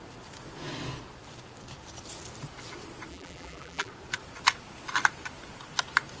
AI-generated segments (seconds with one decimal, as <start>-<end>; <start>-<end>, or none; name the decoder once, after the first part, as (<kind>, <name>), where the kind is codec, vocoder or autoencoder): 3.1-3.9 (vocoder, BigVGAN v2)